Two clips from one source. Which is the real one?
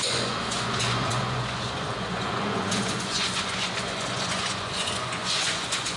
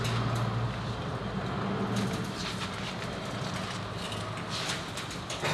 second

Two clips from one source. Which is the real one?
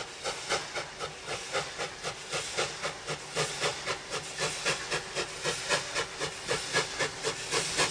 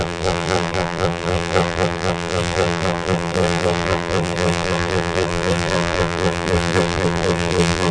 first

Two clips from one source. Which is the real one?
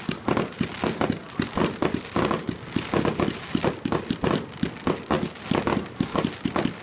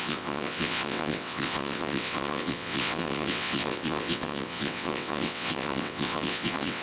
first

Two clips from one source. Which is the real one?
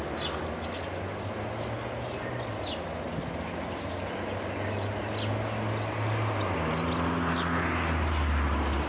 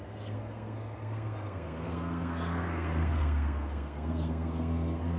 first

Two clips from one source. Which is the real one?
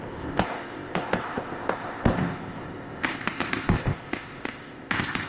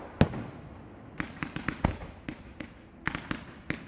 second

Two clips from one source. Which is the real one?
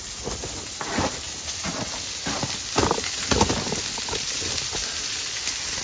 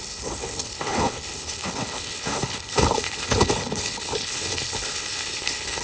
first